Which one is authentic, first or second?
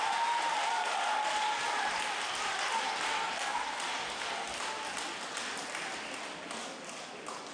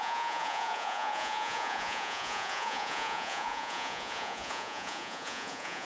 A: first